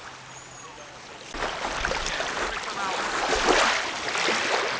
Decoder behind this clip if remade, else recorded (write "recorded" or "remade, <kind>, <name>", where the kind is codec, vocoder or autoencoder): recorded